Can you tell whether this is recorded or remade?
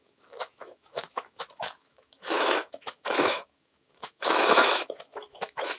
remade